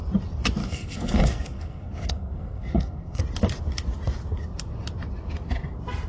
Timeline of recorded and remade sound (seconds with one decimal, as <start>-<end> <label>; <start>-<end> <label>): 0.0-0.6 recorded; 0.6-3.2 remade; 3.2-6.1 recorded